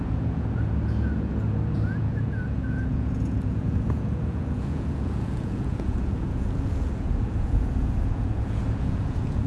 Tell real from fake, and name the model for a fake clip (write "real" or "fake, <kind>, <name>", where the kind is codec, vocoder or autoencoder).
fake, vocoder, Vocos